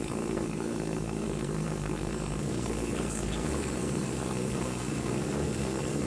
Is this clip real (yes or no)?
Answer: no